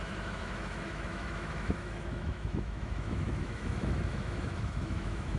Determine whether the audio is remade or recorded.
remade